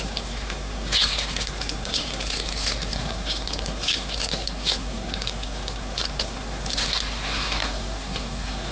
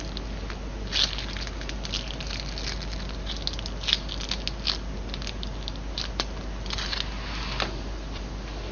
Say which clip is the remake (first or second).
first